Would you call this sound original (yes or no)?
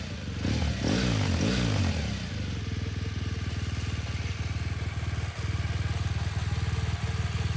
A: yes